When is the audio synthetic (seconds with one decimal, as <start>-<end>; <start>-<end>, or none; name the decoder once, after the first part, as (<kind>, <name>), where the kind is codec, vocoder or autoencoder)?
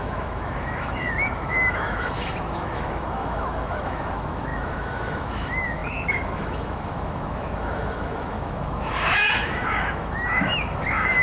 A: 0.0-11.2 (autoencoder, DAC-VAE)